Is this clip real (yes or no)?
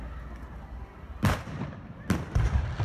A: yes